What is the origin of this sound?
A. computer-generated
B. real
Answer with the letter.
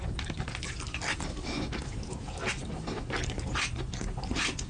B